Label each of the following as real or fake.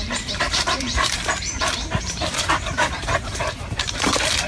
fake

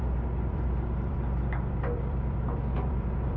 fake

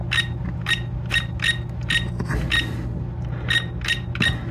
real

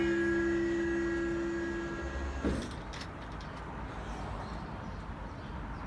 real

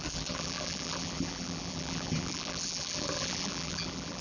fake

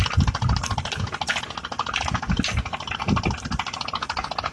real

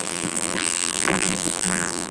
fake